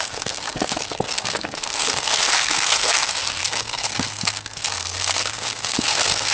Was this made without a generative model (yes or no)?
no